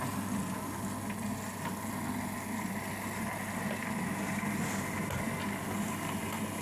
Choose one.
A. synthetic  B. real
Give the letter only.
B